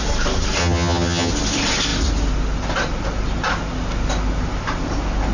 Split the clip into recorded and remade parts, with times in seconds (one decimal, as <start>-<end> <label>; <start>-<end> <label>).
0.0-0.6 recorded; 0.6-1.3 remade; 1.3-5.3 recorded